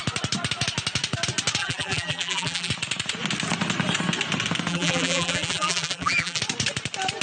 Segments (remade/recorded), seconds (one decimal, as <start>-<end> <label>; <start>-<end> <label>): 0.0-1.6 recorded; 1.6-2.7 remade; 2.7-4.7 recorded; 4.7-6.4 remade; 6.4-7.2 recorded